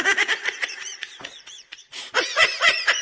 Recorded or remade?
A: remade